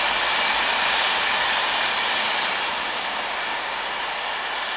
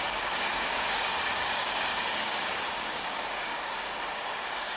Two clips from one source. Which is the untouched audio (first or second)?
first